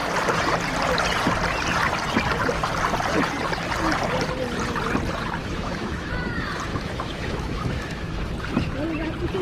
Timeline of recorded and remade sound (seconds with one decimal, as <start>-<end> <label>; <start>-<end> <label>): 0.0-5.4 recorded; 5.4-6.1 remade; 6.1-6.7 recorded; 6.7-8.3 remade; 8.3-9.4 recorded

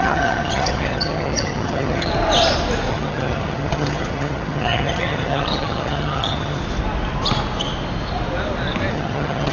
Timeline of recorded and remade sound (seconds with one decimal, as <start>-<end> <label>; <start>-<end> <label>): 0.0-2.1 remade; 2.1-2.9 recorded; 2.9-6.6 remade; 6.6-8.9 recorded; 8.9-9.5 remade

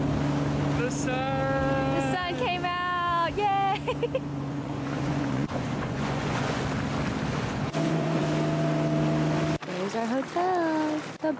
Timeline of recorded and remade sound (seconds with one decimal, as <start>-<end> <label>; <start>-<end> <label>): 0.0-4.3 recorded; 4.3-6.6 remade; 6.6-7.3 recorded; 7.3-8.2 remade; 8.2-11.4 recorded

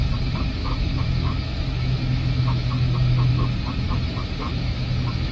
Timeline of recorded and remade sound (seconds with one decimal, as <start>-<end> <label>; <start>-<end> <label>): 0.0-0.6 recorded; 0.6-3.3 remade; 3.3-4.4 recorded; 4.4-5.3 remade

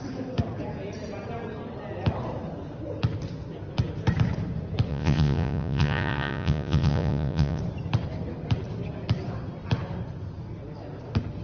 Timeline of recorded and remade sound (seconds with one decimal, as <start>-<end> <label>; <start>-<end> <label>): 0.0-4.9 recorded; 4.9-7.6 remade; 7.6-11.4 recorded

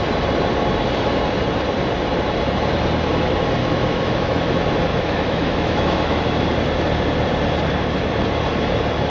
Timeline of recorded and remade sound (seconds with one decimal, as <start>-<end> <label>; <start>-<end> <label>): 0.0-3.6 recorded; 3.6-4.5 remade; 4.5-4.9 recorded; 4.9-6.2 remade; 6.2-9.1 recorded